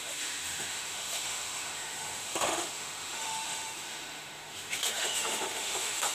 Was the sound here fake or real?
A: fake